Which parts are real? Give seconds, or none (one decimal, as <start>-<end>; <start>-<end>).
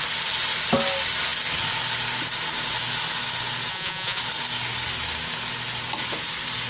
0.0-3.7; 4.2-6.7